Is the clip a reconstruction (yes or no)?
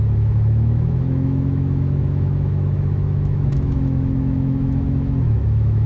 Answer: yes